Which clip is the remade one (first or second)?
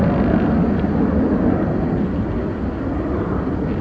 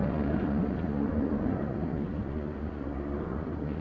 second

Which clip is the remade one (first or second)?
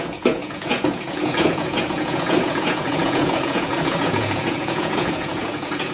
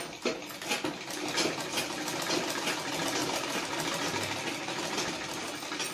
first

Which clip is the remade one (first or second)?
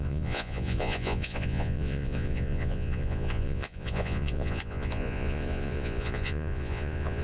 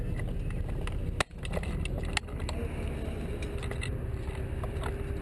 first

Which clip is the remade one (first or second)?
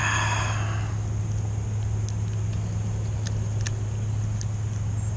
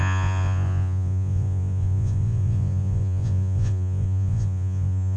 second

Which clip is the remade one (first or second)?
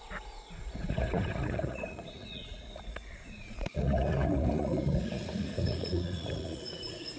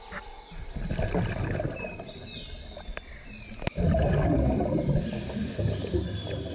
first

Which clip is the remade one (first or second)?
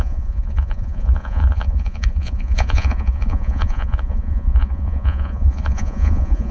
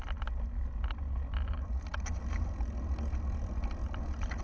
first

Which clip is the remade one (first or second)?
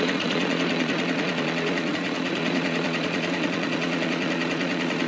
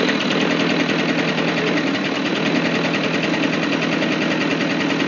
first